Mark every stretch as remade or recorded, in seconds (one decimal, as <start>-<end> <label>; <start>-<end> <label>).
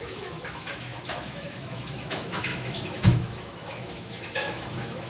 0.0-5.1 remade